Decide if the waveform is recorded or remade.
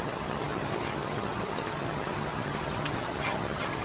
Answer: remade